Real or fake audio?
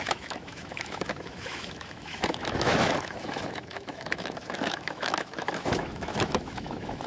fake